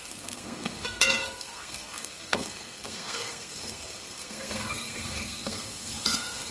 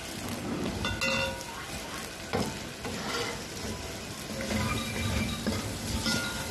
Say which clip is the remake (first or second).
first